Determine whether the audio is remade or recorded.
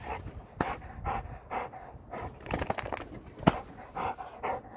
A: recorded